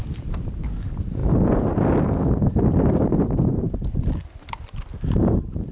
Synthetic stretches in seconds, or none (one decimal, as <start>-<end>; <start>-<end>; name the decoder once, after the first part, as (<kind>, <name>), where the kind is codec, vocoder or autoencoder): 1.2-4.6 (vocoder, BigVGAN v2)